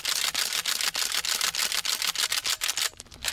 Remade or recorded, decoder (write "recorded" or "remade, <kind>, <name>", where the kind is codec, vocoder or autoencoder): recorded